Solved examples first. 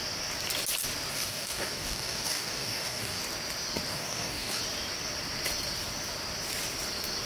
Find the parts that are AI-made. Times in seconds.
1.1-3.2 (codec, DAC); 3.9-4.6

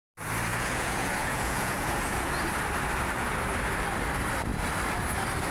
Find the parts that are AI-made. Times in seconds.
0.5-2.3 (vocoder, Vocos)

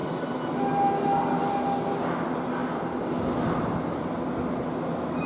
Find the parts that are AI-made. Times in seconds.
none